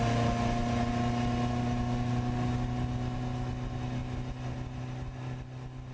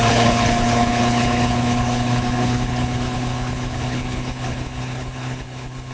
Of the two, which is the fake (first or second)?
second